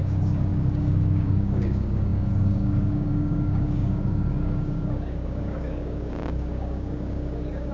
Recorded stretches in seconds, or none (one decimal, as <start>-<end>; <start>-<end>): none